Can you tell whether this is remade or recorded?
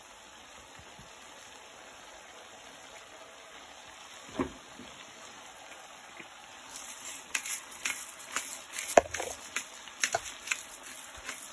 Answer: recorded